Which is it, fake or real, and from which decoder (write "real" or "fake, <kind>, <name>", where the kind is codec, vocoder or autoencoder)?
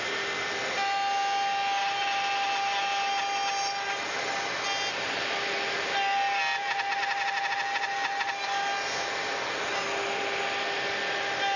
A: real